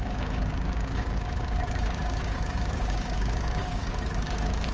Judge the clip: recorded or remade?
remade